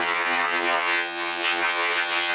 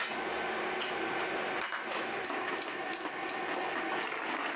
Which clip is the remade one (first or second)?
first